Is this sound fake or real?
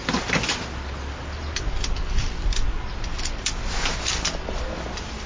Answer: real